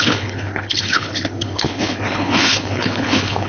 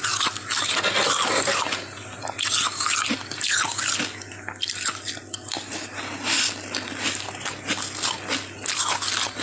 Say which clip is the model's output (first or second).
first